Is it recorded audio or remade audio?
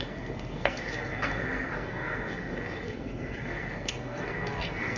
remade